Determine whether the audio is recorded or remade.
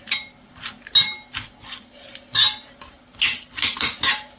recorded